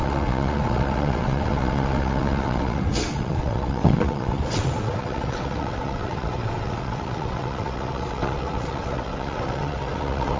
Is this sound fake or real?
fake